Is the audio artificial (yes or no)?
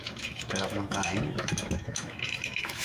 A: yes